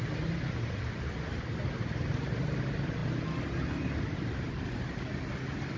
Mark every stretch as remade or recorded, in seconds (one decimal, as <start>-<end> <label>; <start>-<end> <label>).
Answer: 0.0-5.8 recorded